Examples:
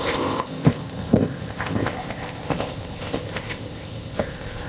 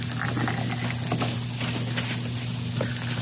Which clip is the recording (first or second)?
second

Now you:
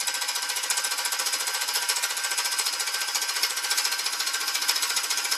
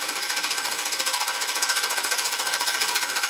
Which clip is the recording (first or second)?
first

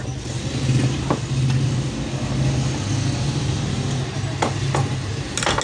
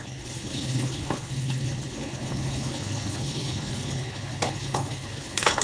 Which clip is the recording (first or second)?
first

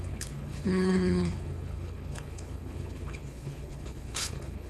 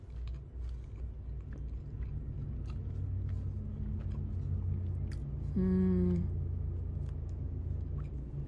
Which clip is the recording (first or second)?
second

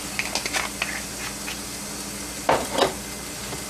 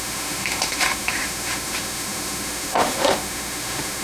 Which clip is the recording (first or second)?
first